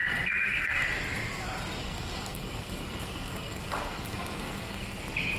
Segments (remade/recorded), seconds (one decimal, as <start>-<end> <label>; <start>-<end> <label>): 0.0-0.9 remade; 0.9-1.8 recorded; 1.8-5.0 remade; 5.0-5.4 recorded